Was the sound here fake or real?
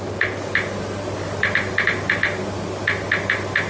real